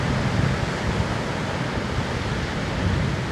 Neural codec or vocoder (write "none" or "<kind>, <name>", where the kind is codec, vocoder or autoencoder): none